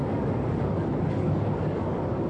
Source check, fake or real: fake